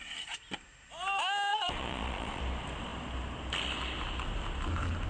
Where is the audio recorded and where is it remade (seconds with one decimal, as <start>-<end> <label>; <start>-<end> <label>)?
0.0-1.5 recorded; 1.5-2.4 remade; 2.4-5.1 recorded

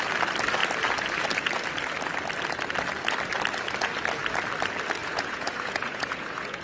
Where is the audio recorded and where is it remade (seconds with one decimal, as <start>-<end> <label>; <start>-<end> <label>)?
0.0-5.0 recorded; 5.0-6.6 remade

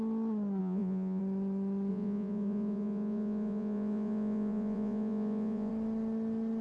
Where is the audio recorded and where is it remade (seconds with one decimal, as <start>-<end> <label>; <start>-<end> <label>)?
0.0-0.6 recorded; 0.6-1.2 remade; 1.2-1.9 recorded; 1.9-5.7 remade; 5.7-6.6 recorded

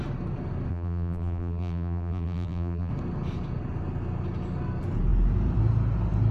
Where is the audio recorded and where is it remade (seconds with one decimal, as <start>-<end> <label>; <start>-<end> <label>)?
0.0-0.7 recorded; 0.7-2.9 remade; 2.9-6.3 recorded

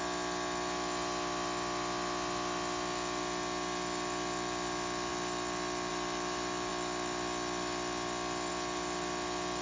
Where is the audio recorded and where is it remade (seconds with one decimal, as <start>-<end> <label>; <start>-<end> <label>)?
0.0-9.6 recorded